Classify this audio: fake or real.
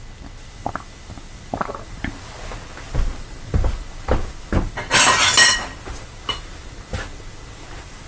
real